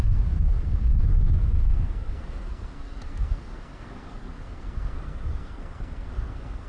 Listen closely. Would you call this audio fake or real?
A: fake